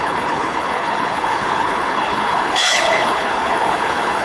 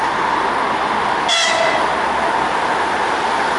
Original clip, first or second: second